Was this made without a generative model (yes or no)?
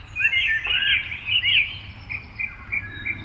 yes